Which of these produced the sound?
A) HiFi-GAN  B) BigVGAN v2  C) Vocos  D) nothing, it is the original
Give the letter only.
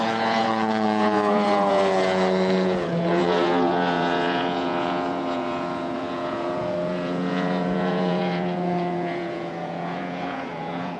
C